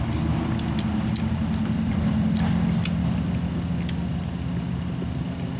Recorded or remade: recorded